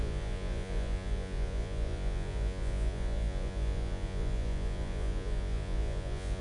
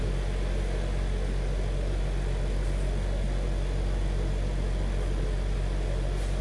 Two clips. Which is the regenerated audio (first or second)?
first